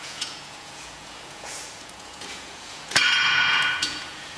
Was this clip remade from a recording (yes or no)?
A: yes